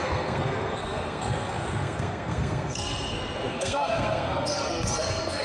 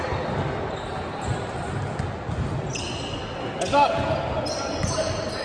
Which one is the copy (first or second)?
first